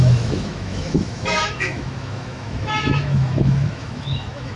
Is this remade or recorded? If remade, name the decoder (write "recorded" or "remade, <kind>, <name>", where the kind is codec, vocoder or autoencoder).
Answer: remade, autoencoder, DAC-VAE